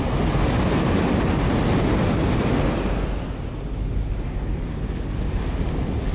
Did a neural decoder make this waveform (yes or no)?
no